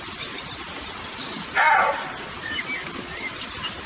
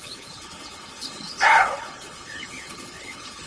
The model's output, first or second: second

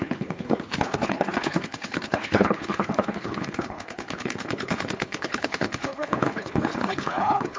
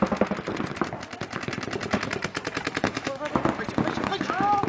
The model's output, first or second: first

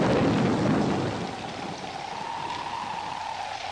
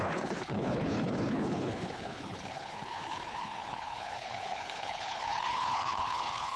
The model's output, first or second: second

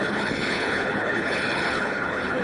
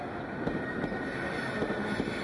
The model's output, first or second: first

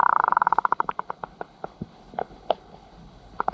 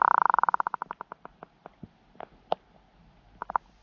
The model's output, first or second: first